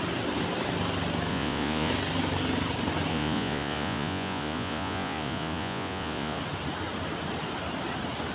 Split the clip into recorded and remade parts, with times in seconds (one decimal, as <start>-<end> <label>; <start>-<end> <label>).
0.0-1.3 recorded; 1.3-1.9 remade; 1.9-3.1 recorded; 3.1-6.4 remade; 6.4-8.3 recorded